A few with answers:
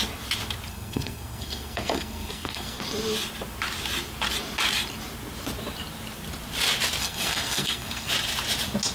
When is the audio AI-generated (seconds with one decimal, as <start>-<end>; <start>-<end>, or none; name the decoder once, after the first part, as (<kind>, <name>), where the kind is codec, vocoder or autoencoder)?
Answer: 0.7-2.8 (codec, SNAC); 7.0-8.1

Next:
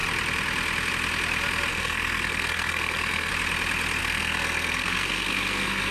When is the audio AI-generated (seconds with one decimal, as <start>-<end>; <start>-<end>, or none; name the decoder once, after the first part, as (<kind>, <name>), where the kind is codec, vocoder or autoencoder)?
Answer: 1.7-3.3 (codec, SNAC); 4.0-5.9

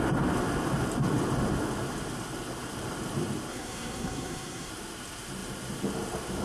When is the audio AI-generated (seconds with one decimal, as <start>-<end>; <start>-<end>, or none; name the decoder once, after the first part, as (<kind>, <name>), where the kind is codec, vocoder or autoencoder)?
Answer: 3.5-4.7 (codec, SNAC)

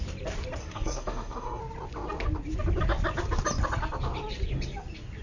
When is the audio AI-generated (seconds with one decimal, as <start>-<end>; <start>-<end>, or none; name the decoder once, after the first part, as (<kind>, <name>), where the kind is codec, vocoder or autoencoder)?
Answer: 0.6-1.6 (codec, SNAC)

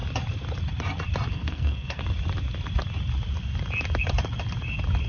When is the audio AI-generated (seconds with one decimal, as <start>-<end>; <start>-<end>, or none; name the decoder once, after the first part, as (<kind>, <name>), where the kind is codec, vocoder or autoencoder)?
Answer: 1.3-2.0 (codec, SNAC)

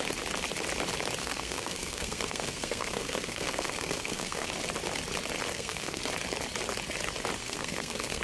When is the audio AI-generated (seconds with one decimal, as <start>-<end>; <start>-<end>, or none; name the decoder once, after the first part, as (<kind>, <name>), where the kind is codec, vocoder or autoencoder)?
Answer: 1.2-4.5 (codec, SNAC); 5.5-6.0; 7.4-8.2

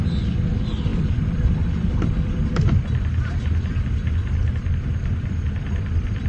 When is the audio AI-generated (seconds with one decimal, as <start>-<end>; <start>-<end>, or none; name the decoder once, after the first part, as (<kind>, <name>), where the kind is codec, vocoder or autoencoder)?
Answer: none